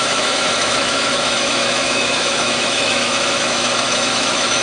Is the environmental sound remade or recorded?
remade